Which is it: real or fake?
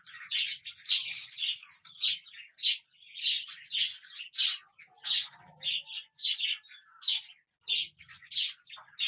real